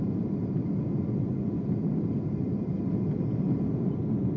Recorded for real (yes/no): yes